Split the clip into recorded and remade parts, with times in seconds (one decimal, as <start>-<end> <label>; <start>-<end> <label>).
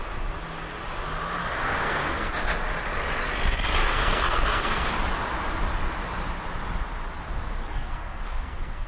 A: 0.0-1.4 recorded; 1.4-2.3 remade; 2.3-3.8 recorded; 3.8-4.9 remade; 4.9-7.6 recorded; 7.6-8.9 remade